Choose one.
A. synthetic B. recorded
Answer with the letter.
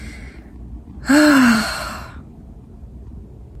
B